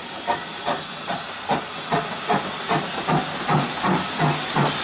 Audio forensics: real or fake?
real